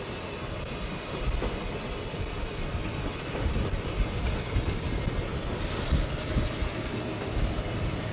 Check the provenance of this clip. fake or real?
real